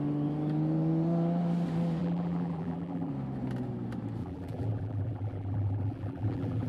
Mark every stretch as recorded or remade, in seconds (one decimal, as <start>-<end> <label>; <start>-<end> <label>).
0.0-2.0 recorded; 2.0-3.1 remade; 3.1-4.2 recorded; 4.2-6.7 remade